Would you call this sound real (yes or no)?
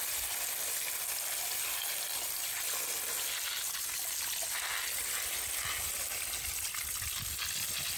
yes